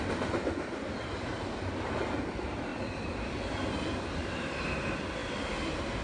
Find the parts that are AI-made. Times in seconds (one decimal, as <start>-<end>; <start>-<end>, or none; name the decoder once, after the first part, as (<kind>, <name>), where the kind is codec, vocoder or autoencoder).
none